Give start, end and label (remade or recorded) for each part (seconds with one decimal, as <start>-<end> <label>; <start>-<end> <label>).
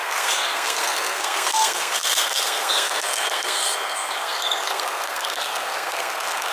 0.0-6.5 remade